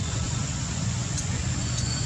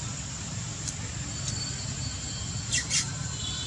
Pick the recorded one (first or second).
second